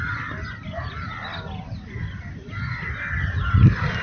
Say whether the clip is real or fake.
real